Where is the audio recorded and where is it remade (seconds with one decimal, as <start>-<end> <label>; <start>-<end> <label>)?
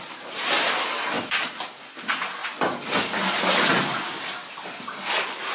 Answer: 0.0-5.5 recorded